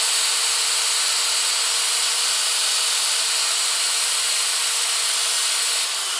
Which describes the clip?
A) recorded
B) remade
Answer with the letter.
A